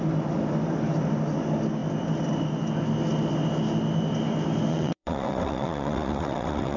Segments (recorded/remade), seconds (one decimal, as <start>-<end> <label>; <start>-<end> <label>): 0.0-4.7 recorded; 4.7-6.8 remade